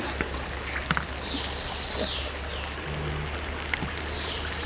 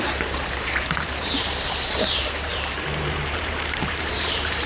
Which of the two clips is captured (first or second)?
first